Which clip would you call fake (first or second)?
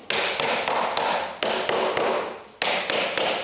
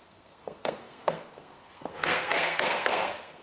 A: second